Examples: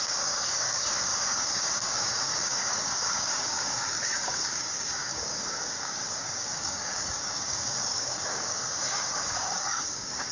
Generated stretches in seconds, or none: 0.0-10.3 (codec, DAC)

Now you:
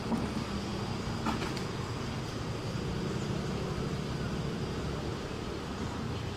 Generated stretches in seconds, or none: none

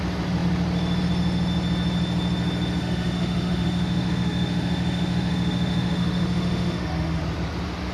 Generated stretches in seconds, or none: 2.8-7.2 (autoencoder, DAC-VAE)

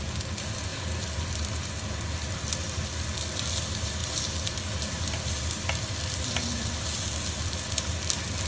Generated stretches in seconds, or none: none

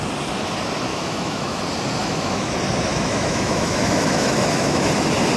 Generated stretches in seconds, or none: 0.9-1.6 (autoencoder, DAC-VAE); 2.0-2.5; 2.9-4.9

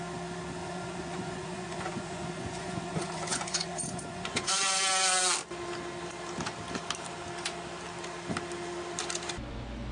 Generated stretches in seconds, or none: 0.6-4.5 (vocoder, Vocos)

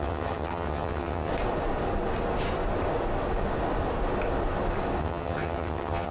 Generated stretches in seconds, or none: 0.0-1.3 (vocoder, HiFi-GAN); 5.0-6.1

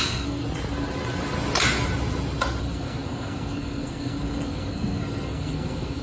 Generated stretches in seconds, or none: 0.0-0.4 (codec, SNAC); 2.6-6.0